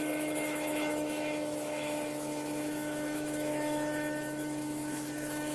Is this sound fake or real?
fake